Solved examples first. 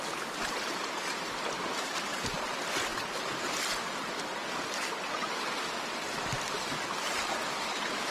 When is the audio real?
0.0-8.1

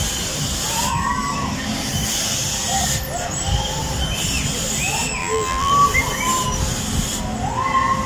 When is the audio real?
0.0-5.2; 5.7-8.1

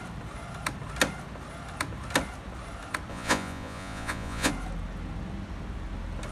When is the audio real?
0.0-3.1; 4.5-6.3

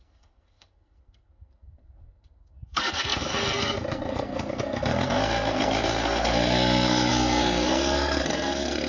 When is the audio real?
none

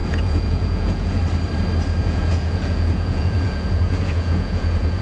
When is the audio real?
1.2-2.0

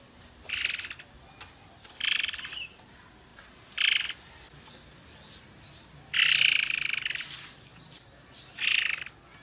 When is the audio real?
0.0-9.4

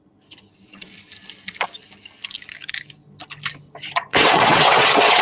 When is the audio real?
0.0-4.1

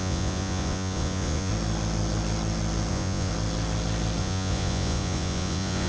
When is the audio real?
1.5-2.9; 3.3-4.2